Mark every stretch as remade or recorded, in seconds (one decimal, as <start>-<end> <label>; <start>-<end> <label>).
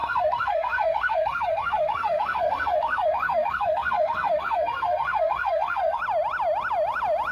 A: 0.0-6.0 remade; 6.0-7.3 recorded